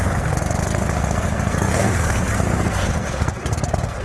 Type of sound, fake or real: fake